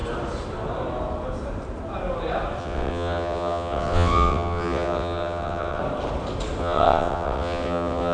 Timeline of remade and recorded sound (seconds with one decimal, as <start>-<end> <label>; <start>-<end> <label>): 0.0-2.6 recorded; 2.6-5.8 remade; 5.8-6.6 recorded; 6.6-8.1 remade